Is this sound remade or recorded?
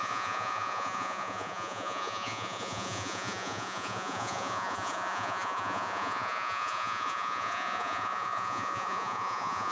remade